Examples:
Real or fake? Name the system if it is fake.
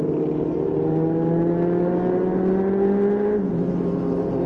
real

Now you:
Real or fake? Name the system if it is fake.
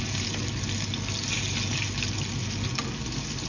real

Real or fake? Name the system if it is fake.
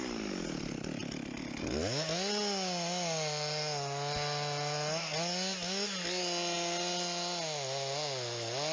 real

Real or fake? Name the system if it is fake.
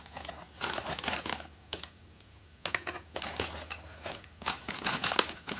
real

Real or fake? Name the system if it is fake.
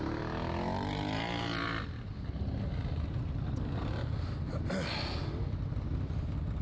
real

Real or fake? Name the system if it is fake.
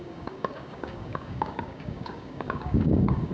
fake, codec, DAC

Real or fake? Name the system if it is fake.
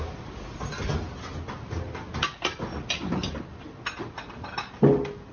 real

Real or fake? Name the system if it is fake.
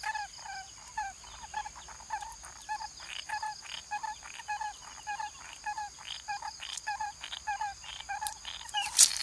real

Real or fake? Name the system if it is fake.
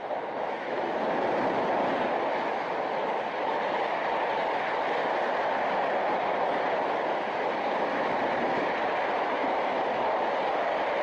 real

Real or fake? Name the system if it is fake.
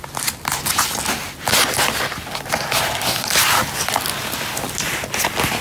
real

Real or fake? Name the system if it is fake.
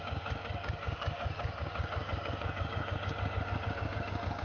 fake, codec, DAC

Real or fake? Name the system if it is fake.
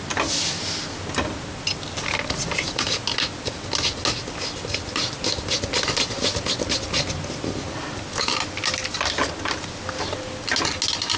real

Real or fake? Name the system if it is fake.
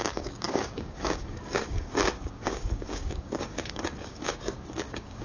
fake, codec, DAC